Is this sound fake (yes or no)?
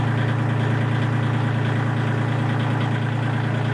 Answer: no